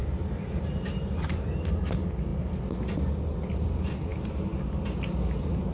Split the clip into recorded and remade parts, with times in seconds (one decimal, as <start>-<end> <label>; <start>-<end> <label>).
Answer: 0.0-1.9 remade; 1.9-4.1 recorded; 4.1-4.8 remade; 4.8-5.7 recorded

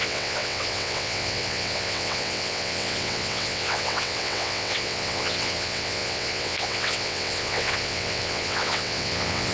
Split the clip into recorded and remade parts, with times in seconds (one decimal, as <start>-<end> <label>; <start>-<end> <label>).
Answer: 0.0-9.5 remade

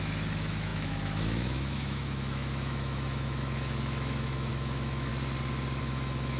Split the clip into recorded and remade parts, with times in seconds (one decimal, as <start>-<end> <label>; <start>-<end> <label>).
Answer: 0.0-5.1 remade; 5.1-5.8 recorded; 5.8-6.4 remade